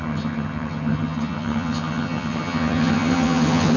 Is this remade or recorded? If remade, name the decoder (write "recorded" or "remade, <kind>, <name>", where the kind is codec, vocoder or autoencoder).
remade, vocoder, HiFi-GAN